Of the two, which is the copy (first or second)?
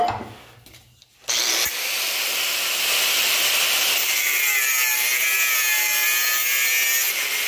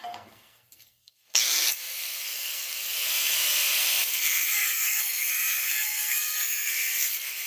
second